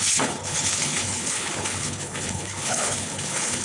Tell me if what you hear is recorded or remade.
remade